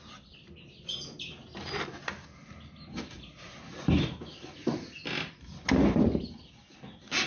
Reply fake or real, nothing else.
real